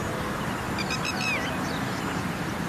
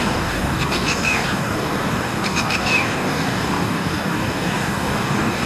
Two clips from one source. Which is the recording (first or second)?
first